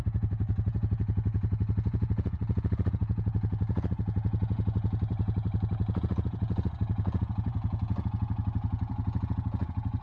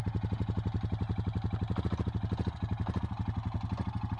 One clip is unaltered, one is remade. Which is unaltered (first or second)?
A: second